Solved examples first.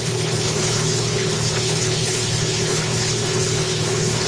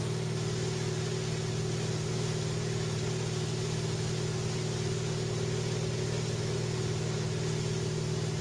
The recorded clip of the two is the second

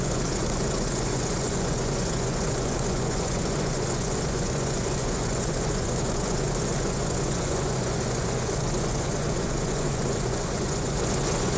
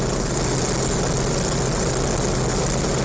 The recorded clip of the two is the second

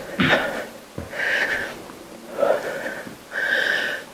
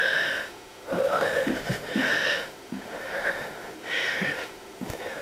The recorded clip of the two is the first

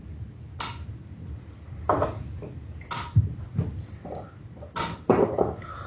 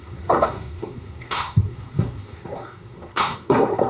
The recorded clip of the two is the first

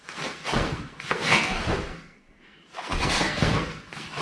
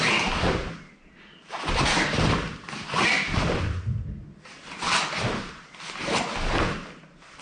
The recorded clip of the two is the second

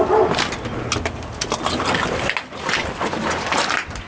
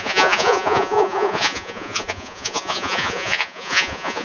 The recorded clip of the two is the first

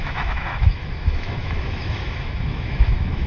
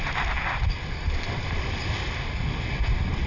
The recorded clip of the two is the second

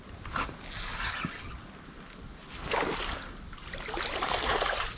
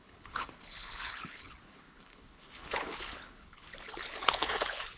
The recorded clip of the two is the first